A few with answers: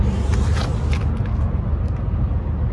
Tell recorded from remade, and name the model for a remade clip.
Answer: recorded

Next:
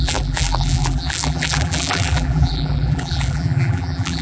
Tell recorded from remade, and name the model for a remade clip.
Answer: remade, vocoder, BigVGAN v2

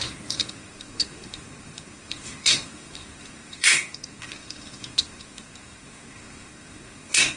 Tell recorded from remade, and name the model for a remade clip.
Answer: remade, codec, SNAC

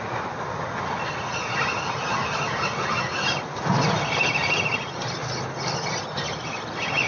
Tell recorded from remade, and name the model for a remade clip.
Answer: recorded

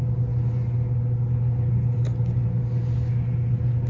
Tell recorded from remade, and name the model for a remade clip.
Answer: recorded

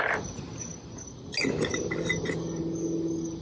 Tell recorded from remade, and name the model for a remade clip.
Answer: recorded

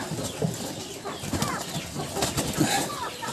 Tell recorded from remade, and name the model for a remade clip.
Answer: recorded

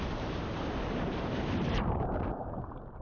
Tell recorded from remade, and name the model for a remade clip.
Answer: remade, vocoder, BigVGAN v2